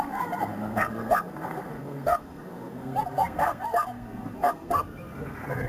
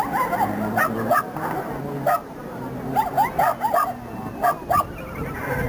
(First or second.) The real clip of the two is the second